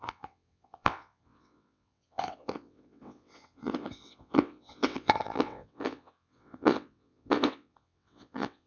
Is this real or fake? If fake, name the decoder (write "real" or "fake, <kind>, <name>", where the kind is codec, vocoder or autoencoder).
fake, vocoder, WaveNeXt